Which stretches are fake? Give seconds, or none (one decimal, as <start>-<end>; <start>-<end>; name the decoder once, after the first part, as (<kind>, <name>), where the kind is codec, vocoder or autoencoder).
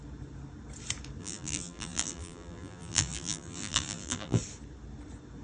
1.2-4.4 (vocoder, BigVGAN v2)